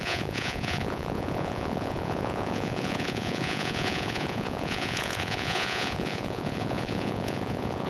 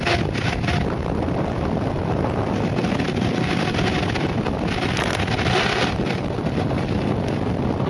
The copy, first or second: first